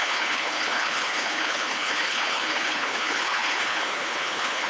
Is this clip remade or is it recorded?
remade